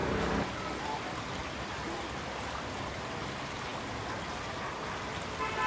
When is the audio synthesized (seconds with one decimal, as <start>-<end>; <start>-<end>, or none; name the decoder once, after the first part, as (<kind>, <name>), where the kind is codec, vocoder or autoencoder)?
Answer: none